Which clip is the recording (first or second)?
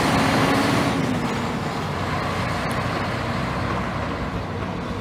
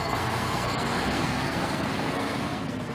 first